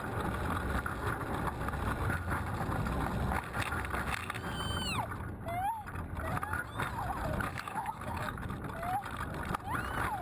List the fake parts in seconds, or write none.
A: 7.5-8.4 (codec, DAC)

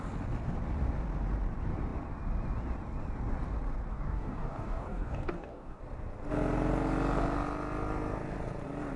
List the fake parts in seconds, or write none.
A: 3.9-5.8 (codec, DAC)

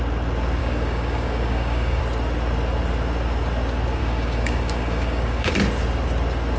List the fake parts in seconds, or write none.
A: 0.6-2.0 (codec, DAC); 4.0-5.5

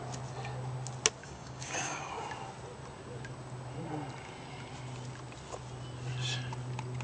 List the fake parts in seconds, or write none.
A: 1.2-2.1 (codec, DAC)

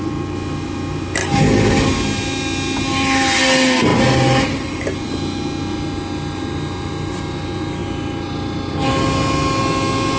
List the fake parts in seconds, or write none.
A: 1.2-1.7 (codec, DAC)

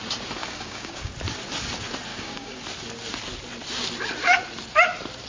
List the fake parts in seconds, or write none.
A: 0.4-1.1 (codec, DAC); 2.1-2.6